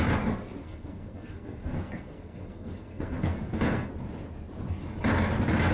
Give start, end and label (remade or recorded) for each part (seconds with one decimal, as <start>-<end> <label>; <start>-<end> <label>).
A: 0.0-0.6 recorded; 0.6-3.9 remade; 3.9-5.7 recorded